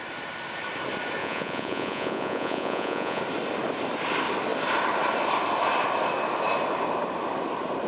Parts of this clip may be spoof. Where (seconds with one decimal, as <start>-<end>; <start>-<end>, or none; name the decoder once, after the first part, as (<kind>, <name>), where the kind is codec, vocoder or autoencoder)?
1.2-3.2 (vocoder, Vocos)